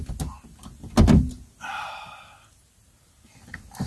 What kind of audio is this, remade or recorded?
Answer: recorded